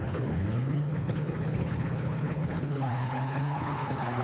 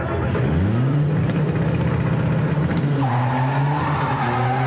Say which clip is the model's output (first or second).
first